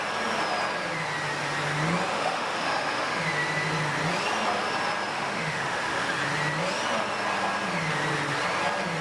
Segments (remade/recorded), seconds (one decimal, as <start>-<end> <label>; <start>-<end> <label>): 0.0-2.1 recorded; 2.1-3.2 remade; 3.2-5.1 recorded; 5.1-6.1 remade; 6.1-9.0 recorded